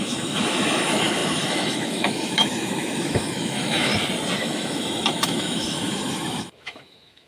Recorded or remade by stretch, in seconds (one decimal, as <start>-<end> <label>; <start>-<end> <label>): 0.0-3.9 remade; 3.9-4.4 recorded; 4.4-7.3 remade